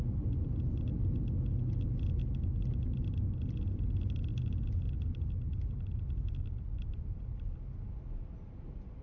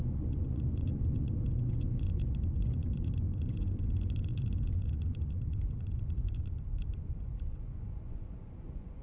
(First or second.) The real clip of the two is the first